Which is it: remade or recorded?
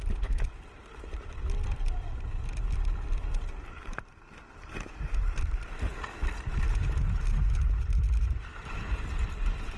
remade